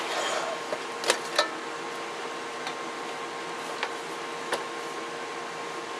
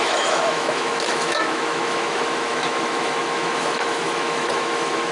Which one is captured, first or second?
first